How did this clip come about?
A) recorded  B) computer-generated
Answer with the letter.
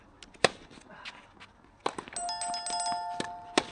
A